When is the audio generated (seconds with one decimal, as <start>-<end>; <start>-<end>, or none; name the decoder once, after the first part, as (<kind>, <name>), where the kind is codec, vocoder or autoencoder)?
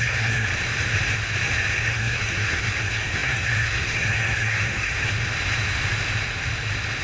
0.0-0.5 (codec, SNAC); 1.9-5.1